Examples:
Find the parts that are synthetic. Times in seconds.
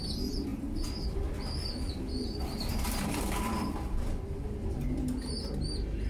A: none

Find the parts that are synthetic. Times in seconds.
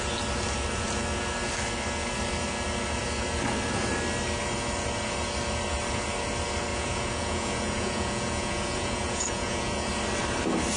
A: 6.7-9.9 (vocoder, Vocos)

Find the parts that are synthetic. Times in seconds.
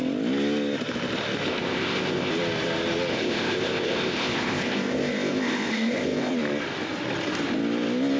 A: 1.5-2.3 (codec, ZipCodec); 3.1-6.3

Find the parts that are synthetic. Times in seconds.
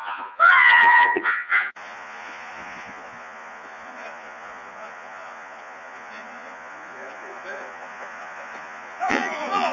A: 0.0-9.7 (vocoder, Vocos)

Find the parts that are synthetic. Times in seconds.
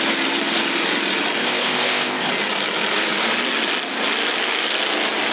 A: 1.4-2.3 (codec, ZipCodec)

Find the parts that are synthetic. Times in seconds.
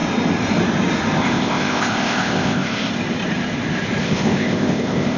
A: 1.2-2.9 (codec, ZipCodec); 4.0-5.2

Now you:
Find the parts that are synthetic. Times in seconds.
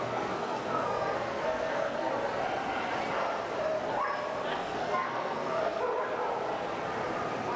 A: 0.0-2.1 (codec, SNAC); 4.5-5.8